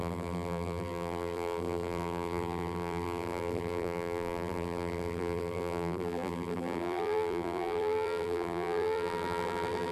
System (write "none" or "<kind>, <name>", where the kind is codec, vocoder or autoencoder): vocoder, BigVGAN v2